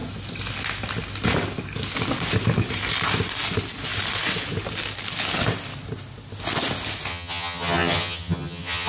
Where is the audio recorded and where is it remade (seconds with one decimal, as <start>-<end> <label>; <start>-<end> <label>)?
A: 0.0-7.1 recorded; 7.1-8.9 remade

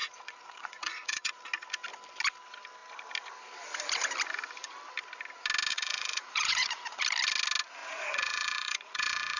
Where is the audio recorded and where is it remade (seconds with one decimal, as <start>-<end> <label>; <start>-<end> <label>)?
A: 0.0-1.4 remade; 1.4-5.7 recorded; 5.7-7.0 remade; 7.0-7.8 recorded; 7.8-9.4 remade

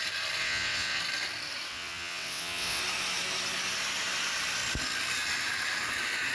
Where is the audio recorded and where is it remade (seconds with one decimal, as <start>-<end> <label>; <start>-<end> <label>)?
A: 0.0-0.4 recorded; 0.4-1.0 remade; 1.0-1.7 recorded; 1.7-2.8 remade; 2.8-6.3 recorded

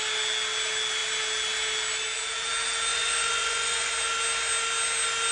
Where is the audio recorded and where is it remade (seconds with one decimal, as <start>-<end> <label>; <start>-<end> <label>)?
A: 0.0-2.9 recorded; 2.9-3.9 remade; 3.9-5.3 recorded

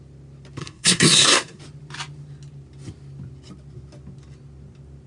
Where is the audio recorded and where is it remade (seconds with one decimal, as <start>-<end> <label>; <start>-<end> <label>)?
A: 0.0-0.6 recorded; 0.6-1.6 remade; 1.6-5.1 recorded